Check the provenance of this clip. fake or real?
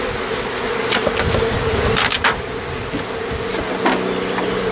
real